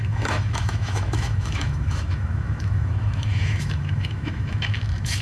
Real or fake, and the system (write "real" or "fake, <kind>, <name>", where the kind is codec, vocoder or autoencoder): fake, autoencoder, DAC-VAE